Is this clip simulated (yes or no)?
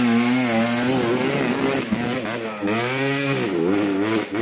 no